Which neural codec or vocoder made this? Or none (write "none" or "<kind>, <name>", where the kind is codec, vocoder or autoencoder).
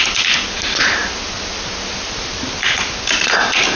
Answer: none